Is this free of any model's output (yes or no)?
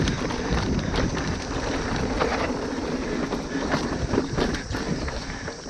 yes